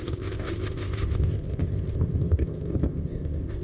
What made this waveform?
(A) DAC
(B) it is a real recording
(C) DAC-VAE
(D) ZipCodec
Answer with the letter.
D